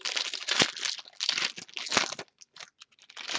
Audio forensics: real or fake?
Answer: real